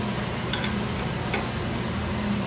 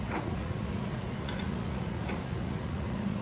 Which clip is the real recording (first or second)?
first